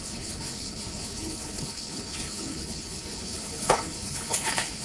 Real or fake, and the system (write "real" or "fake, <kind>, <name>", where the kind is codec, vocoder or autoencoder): fake, codec, HILCodec